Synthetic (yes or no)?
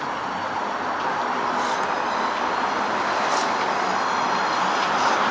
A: no